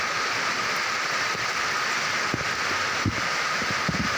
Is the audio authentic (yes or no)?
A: no